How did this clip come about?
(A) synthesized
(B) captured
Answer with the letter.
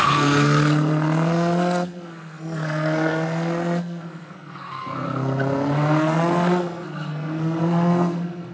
A